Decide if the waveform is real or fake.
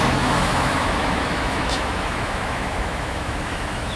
fake